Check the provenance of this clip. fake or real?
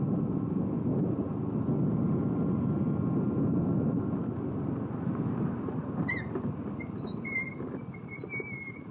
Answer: real